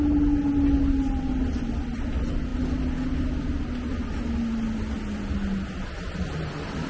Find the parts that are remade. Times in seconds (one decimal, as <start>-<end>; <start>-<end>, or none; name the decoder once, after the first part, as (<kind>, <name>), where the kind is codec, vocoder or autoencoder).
none